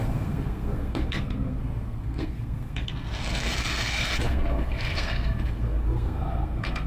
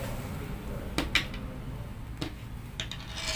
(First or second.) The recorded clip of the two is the second